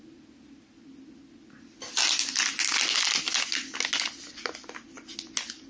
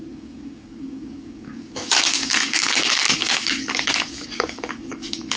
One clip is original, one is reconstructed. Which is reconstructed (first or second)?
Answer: second